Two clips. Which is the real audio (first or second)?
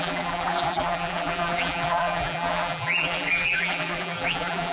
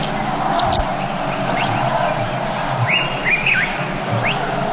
second